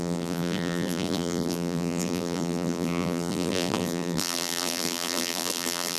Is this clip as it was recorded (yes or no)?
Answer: no